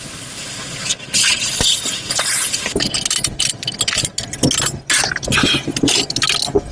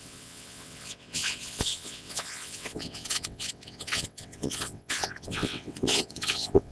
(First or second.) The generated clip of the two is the second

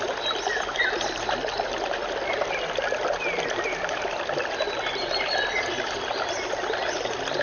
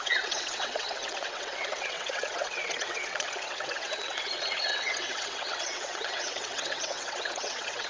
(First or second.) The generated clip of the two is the second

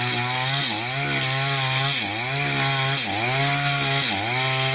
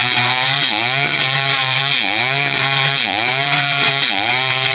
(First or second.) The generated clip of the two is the second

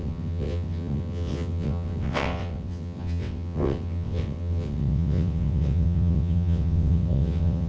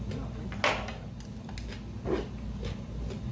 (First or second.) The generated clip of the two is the first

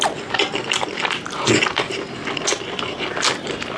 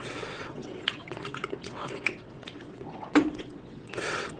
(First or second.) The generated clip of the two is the second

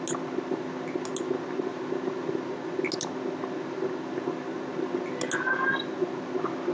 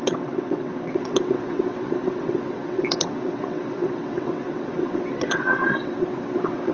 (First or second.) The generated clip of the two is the second